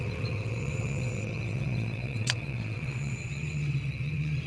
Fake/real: fake